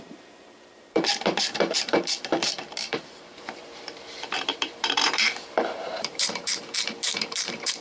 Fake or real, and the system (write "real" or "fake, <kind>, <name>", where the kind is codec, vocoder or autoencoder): fake, vocoder, BigVGAN v2